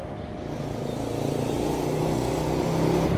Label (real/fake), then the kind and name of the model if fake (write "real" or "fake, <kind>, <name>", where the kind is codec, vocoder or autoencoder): real